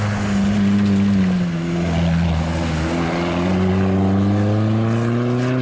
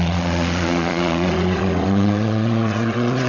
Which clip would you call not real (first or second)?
second